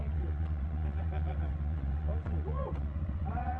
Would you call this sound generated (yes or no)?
yes